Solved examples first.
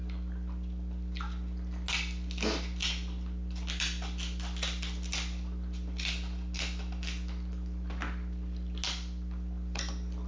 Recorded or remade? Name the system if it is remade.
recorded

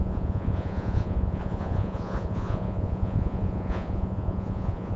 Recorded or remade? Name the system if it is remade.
remade, vocoder, Vocos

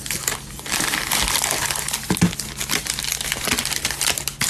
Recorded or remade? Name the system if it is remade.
recorded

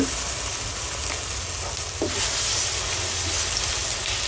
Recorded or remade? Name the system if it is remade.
recorded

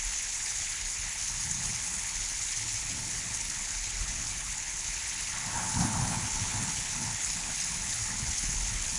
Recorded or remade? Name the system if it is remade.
remade, codec, HILCodec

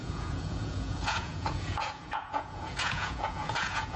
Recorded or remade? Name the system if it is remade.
remade, vocoder, Vocos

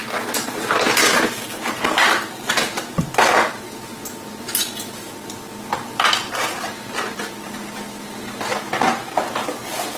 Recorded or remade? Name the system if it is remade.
recorded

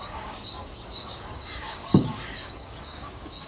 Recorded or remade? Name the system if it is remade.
remade, codec, DAC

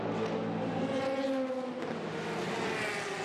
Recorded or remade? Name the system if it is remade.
recorded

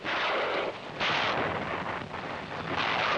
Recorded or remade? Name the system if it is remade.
recorded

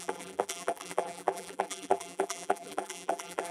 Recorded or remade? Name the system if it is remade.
remade, vocoder, BigVGAN v2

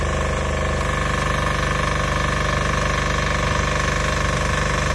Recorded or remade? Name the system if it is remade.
recorded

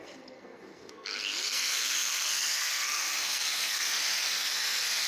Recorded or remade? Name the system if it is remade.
remade, codec, SNAC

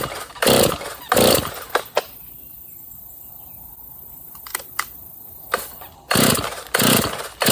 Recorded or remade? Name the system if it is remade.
recorded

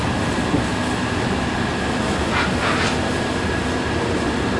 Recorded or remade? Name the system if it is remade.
recorded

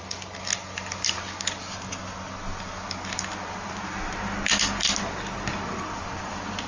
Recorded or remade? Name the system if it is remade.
recorded